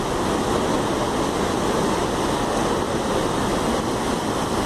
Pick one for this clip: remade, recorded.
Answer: recorded